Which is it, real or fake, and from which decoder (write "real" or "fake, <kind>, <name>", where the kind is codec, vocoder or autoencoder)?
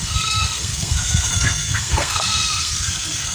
fake, codec, SNAC